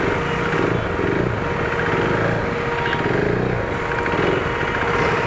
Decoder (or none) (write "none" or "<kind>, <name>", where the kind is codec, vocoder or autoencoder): none